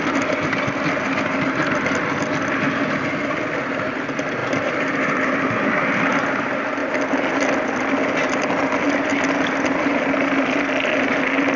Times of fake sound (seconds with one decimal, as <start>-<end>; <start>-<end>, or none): none